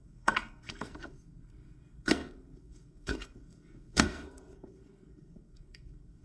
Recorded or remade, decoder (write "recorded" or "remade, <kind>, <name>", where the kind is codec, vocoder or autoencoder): remade, codec, SNAC